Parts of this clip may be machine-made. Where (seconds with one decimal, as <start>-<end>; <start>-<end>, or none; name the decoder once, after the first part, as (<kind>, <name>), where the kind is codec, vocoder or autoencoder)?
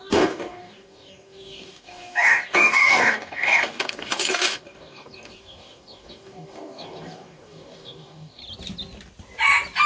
0.0-8.4 (codec, DAC)